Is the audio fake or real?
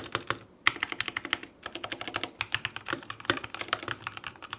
real